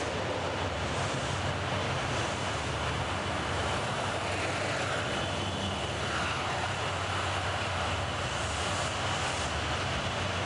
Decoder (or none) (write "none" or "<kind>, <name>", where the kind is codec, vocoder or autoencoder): none